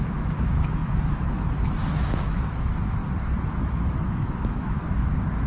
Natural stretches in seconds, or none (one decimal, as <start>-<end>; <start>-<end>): 3.0-3.6; 4.8-5.5

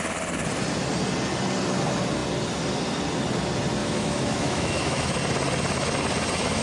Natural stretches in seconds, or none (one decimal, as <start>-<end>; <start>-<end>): 0.0-3.8; 5.2-6.6

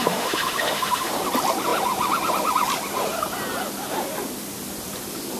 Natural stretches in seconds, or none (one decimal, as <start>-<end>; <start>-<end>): 1.1-5.4

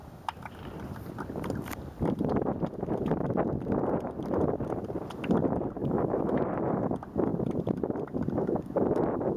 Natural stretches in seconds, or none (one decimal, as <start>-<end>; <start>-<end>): 0.0-5.8; 6.4-9.4

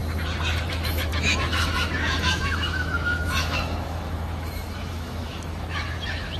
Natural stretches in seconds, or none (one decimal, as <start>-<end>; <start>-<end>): 0.0-0.7

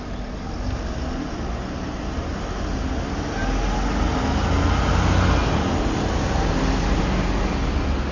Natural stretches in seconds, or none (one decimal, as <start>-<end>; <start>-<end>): 0.0-8.1

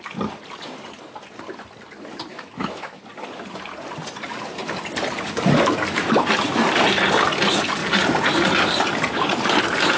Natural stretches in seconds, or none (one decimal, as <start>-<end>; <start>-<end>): 0.0-2.3; 3.0-10.0

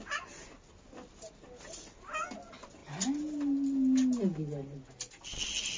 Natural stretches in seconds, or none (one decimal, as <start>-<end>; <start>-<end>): 0.0-5.8